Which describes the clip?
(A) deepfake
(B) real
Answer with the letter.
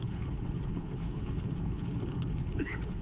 A